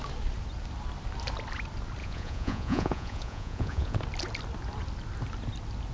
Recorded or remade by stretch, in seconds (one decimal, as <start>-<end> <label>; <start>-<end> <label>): 0.0-2.0 recorded; 2.0-4.0 remade; 4.0-5.9 recorded